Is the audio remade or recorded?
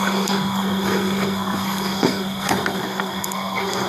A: remade